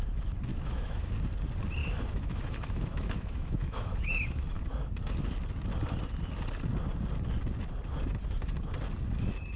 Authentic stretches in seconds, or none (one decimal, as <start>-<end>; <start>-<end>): 0.0-0.5; 1.1-1.8; 4.6-9.6